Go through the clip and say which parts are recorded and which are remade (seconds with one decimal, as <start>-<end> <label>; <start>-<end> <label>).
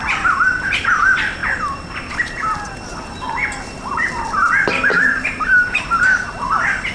0.0-1.4 recorded; 1.4-2.7 remade; 2.7-4.9 recorded; 4.9-6.3 remade; 6.3-6.9 recorded